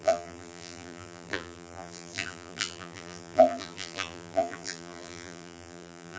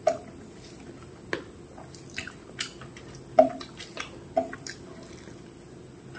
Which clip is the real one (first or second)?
second